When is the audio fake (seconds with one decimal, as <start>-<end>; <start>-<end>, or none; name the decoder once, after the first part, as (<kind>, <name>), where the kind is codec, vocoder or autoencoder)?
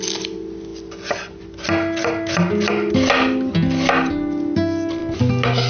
none